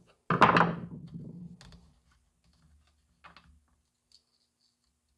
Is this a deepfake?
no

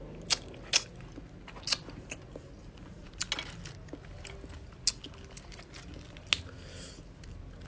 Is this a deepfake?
no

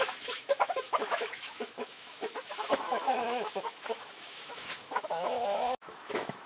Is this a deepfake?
yes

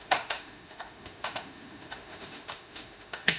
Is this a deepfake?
yes